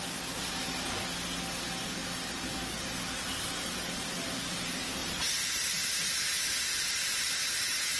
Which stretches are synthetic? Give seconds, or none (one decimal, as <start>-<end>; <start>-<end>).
none